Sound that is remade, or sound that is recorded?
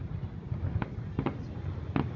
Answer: recorded